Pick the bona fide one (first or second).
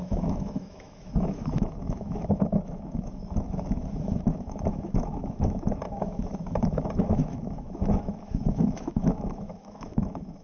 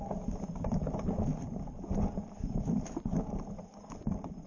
second